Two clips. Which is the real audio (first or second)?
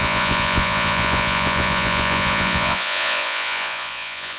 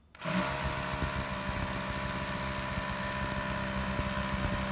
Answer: second